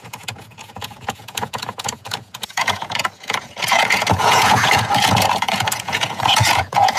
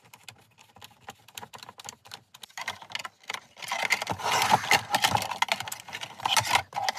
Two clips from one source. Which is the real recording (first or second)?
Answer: second